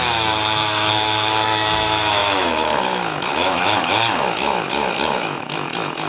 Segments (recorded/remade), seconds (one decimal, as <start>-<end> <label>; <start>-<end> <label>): 0.0-6.1 remade